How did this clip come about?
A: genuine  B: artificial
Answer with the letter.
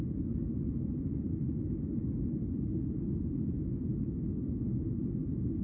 A